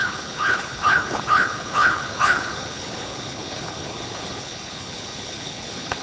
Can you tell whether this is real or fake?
fake